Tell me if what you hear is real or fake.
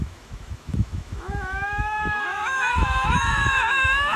fake